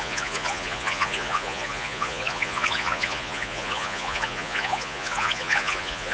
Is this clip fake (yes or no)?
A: yes